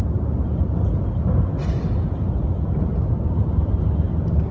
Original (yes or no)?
yes